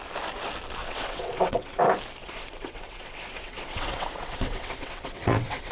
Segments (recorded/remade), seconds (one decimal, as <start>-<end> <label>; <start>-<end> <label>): 0.0-0.8 recorded; 0.8-1.8 remade; 1.8-2.2 recorded; 2.2-5.7 remade

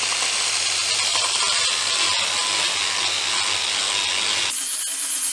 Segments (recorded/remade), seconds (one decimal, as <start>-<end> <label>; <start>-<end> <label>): 0.0-5.3 recorded

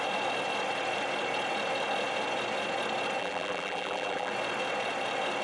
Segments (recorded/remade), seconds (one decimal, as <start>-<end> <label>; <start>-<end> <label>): 0.0-3.2 recorded; 3.2-4.3 remade; 4.3-5.4 recorded

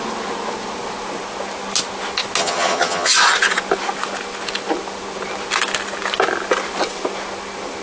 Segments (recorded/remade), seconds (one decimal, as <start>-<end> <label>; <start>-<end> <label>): 0.0-2.4 recorded; 2.4-3.1 remade; 3.1-7.8 recorded

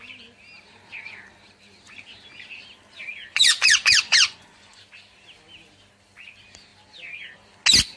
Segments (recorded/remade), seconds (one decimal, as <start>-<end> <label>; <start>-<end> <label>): 0.0-3.3 recorded; 3.3-4.8 remade; 4.8-8.0 recorded

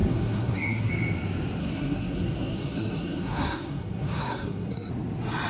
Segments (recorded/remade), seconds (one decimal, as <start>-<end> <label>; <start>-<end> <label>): 0.0-0.9 remade; 0.9-1.6 recorded; 1.6-4.9 remade; 4.9-5.5 recorded

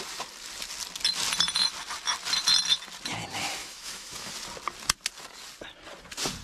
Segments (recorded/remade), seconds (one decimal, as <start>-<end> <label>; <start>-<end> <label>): 0.0-3.6 recorded; 3.6-4.3 remade; 4.3-6.4 recorded